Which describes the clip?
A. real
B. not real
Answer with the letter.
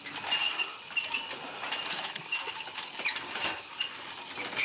A